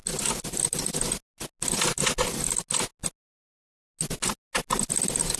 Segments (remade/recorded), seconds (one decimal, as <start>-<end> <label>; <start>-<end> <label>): 0.0-5.4 recorded

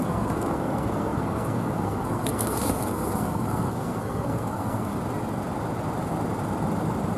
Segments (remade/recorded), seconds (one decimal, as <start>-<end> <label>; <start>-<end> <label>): 0.0-4.9 remade; 4.9-7.2 recorded

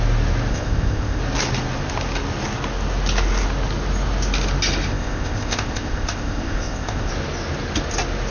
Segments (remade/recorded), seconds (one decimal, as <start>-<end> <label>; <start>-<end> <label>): 0.0-0.5 recorded; 0.5-1.2 remade; 1.2-4.9 recorded; 4.9-7.1 remade; 7.1-8.3 recorded

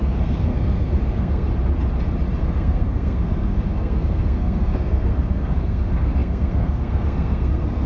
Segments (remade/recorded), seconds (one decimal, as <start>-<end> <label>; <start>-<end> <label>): 0.0-1.5 remade; 1.5-2.4 recorded; 2.4-7.9 remade

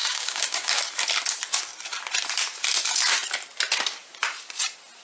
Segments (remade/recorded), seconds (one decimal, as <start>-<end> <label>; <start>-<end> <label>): 0.0-0.8 remade; 0.8-5.0 recorded